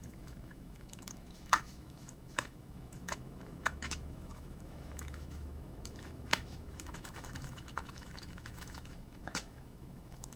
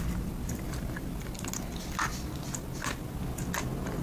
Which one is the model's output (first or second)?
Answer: first